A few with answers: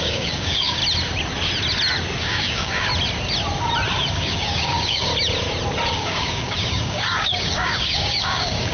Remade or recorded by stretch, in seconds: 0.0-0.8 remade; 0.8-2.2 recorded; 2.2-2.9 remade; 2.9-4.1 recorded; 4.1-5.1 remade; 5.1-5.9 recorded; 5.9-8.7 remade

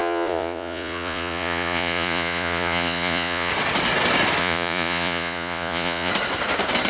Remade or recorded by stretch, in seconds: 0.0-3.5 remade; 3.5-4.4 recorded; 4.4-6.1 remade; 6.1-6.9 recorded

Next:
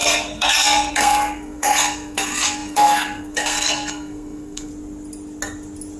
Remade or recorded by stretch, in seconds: 0.0-4.7 remade; 4.7-6.0 recorded

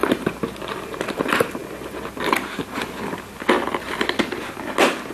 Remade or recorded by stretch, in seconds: 0.0-5.1 recorded

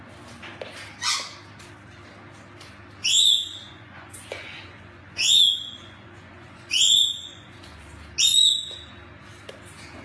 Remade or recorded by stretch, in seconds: 0.0-3.0 recorded; 3.0-7.9 remade; 7.9-10.0 recorded

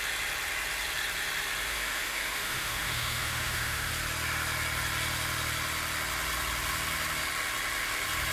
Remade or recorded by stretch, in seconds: 0.0-1.7 recorded; 1.7-3.9 remade; 3.9-8.3 recorded

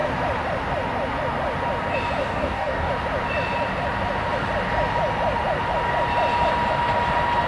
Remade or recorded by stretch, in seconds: 0.0-2.2 recorded; 2.2-2.9 remade; 2.9-7.5 recorded